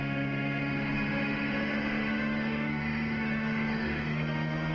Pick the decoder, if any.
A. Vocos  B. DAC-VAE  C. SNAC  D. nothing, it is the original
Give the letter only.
B